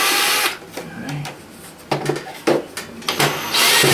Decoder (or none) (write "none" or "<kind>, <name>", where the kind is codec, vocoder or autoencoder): none